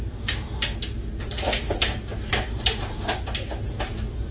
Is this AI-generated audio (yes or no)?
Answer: no